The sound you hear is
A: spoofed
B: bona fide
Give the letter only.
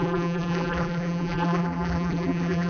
A